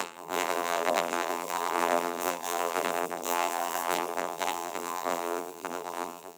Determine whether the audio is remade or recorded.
remade